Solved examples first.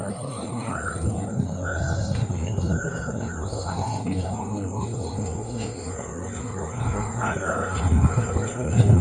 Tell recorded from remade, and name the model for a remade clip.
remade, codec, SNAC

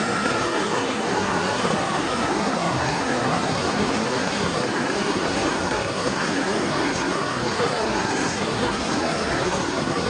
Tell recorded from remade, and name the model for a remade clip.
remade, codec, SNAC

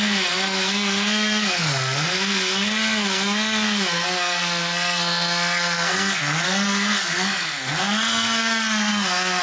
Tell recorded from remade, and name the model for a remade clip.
remade, codec, SNAC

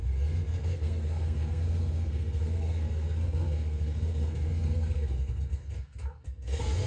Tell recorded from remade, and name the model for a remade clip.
remade, codec, SNAC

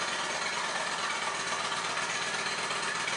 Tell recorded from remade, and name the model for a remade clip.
recorded